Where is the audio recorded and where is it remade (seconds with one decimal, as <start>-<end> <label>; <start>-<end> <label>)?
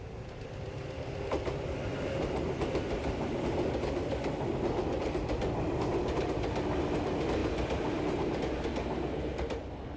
0.0-10.0 recorded